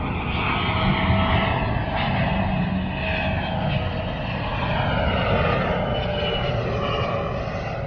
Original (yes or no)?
yes